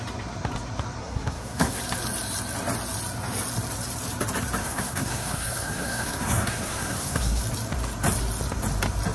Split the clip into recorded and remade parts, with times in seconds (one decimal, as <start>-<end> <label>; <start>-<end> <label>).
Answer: 0.0-1.0 recorded; 1.0-1.8 remade; 1.8-4.6 recorded; 4.6-7.4 remade; 7.4-9.1 recorded